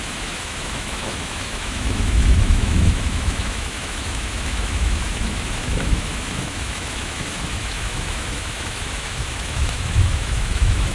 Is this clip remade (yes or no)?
yes